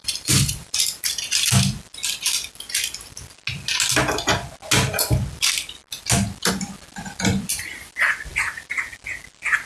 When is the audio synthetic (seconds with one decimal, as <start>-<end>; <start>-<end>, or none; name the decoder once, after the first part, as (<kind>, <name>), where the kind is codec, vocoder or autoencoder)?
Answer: 0.0-1.5 (vocoder, BigVGAN v2); 8.3-9.0